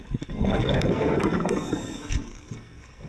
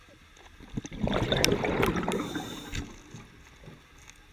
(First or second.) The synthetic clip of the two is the first